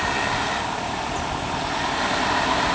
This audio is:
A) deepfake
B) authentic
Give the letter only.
A